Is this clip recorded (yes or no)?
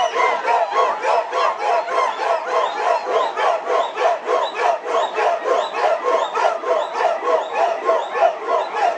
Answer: yes